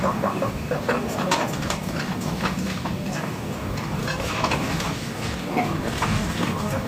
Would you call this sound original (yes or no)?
no